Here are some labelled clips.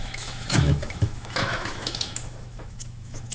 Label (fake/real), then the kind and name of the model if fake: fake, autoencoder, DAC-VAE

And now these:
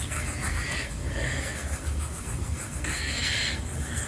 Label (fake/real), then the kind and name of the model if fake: fake, codec, SNAC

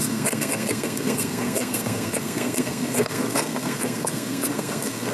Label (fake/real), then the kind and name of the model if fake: fake, codec, SNAC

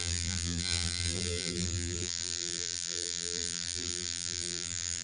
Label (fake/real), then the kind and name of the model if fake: fake, vocoder, BigVGAN v2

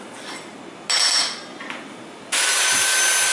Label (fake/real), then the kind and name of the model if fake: real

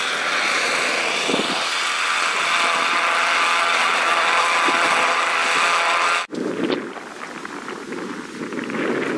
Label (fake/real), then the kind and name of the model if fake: real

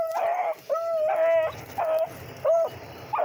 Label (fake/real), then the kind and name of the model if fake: real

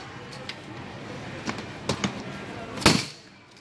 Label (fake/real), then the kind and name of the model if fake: real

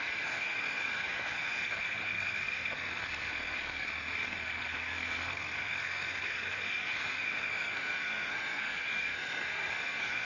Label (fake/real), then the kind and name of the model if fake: fake, codec, SNAC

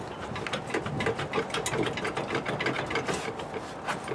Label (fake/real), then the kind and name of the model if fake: real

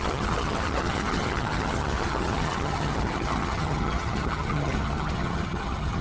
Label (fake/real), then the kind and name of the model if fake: fake, vocoder, HiFi-GAN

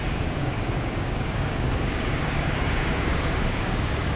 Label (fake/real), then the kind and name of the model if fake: fake, codec, DAC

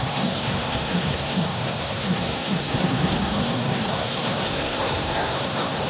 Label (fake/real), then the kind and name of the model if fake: fake, codec, SNAC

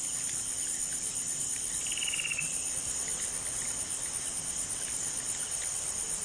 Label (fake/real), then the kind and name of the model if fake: real